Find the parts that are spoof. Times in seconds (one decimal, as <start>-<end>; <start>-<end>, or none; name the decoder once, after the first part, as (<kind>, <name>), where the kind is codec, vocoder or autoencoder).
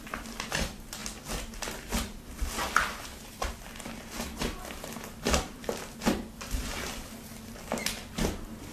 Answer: none